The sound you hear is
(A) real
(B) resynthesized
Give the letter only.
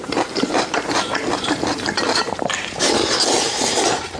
B